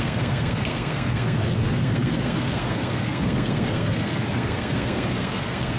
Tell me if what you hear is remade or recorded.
remade